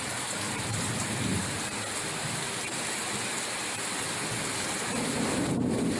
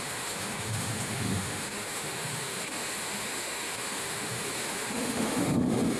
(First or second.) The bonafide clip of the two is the first